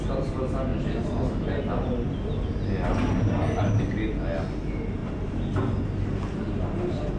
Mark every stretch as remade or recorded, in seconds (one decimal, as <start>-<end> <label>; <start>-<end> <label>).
0.0-7.2 recorded